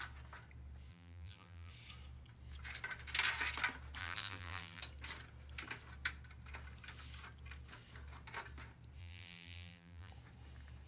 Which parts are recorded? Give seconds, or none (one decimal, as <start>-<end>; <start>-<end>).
0.0-0.9; 1.7-4.0; 4.8-9.0; 10.1-10.9